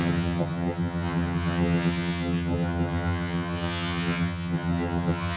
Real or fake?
fake